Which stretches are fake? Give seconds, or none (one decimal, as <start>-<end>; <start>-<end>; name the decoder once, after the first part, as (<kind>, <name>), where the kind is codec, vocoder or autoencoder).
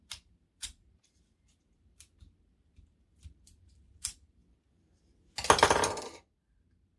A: 0.0-4.4 (vocoder, BigVGAN v2); 5.7-7.0